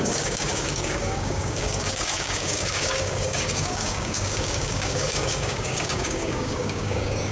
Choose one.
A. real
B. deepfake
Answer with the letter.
B